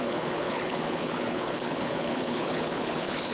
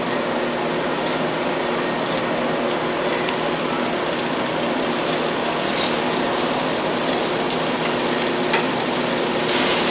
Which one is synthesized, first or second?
first